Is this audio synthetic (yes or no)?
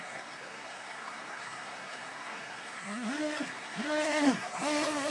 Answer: yes